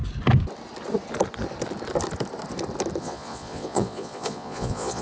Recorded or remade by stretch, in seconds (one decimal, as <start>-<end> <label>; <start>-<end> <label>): 0.0-3.0 recorded; 3.0-5.0 remade